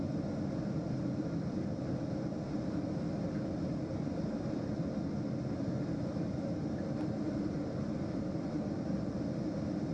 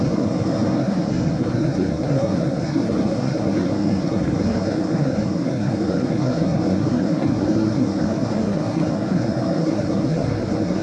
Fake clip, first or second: second